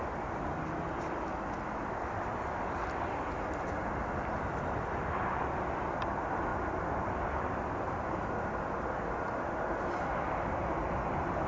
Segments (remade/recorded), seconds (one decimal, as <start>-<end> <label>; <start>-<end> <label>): 0.0-11.5 recorded